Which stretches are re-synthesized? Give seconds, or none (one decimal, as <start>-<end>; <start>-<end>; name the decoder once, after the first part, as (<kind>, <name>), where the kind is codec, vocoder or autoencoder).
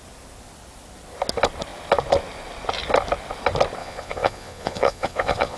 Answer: 3.8-5.6 (vocoder, Vocos)